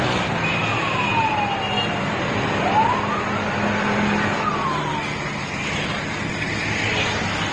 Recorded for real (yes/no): yes